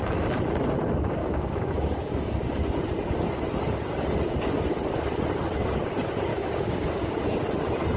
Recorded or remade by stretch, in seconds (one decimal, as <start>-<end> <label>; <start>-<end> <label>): 0.0-1.2 recorded; 1.2-2.6 remade; 2.6-6.3 recorded; 6.3-7.1 remade; 7.1-8.0 recorded